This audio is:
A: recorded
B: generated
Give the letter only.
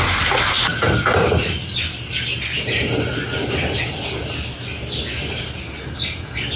A